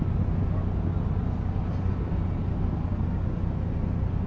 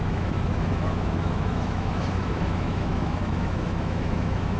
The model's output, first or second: second